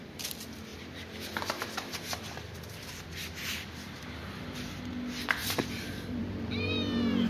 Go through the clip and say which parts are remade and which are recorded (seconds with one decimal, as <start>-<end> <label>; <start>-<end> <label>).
0.0-0.7 recorded; 0.7-4.9 remade; 4.9-5.4 recorded; 5.4-7.3 remade